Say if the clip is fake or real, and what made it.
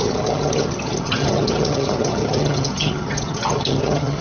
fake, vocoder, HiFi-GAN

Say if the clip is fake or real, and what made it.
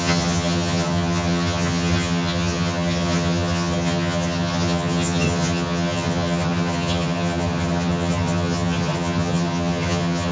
fake, vocoder, HiFi-GAN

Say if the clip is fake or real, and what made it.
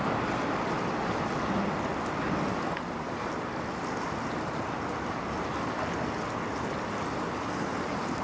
real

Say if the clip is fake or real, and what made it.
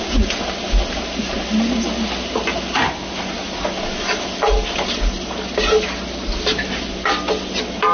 real